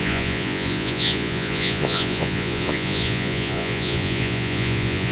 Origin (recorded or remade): remade